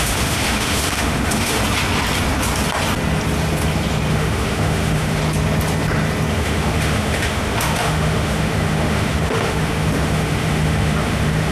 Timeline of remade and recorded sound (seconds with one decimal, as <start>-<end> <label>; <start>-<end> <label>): 0.0-1.6 remade; 1.6-4.1 recorded; 4.1-5.2 remade; 5.2-6.3 recorded; 6.3-11.5 remade